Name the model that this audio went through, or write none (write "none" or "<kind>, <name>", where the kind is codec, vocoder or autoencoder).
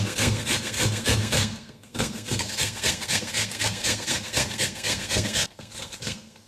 codec, SNAC